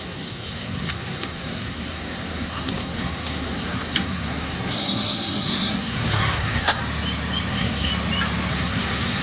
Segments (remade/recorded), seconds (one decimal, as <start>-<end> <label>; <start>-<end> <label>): 0.0-6.8 remade; 6.8-7.5 recorded; 7.5-7.9 remade; 7.9-8.5 recorded; 8.5-9.2 remade